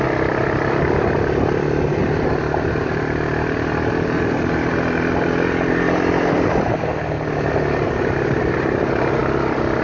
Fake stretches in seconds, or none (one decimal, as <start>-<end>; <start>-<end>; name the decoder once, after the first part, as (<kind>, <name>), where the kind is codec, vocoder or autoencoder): none